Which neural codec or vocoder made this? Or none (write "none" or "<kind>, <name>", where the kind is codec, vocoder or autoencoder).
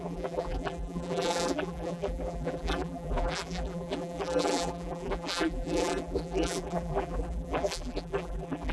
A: vocoder, BigVGAN v2